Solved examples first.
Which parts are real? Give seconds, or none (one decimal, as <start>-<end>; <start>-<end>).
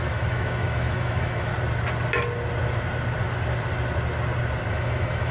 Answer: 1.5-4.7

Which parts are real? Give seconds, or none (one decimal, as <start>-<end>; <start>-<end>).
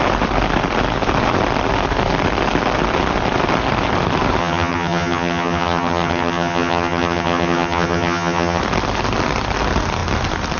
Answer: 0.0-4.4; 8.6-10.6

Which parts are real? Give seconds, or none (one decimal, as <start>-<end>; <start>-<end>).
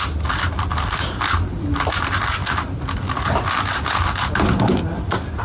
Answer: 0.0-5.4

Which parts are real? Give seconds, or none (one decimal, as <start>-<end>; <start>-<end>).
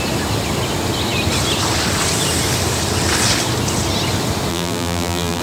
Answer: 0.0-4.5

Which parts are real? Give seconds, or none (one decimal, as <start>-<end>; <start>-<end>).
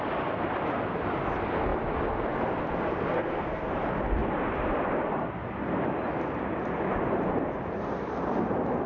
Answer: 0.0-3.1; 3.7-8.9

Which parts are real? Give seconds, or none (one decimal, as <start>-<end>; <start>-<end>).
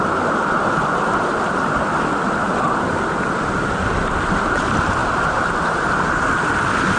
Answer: 0.0-7.0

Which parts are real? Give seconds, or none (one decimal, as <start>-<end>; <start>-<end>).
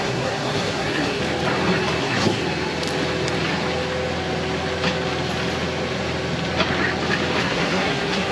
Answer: 1.2-2.0; 2.4-7.4